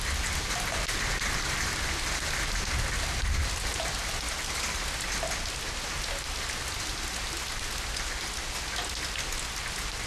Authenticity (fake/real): real